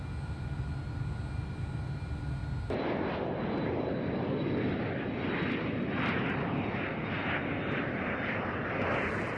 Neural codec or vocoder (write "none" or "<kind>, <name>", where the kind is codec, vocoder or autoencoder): none